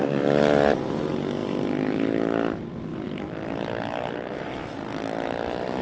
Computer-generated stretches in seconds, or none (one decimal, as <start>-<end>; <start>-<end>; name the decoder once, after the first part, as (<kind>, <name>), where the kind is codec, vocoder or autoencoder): none